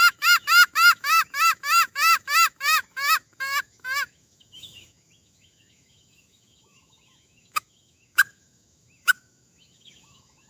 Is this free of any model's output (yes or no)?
no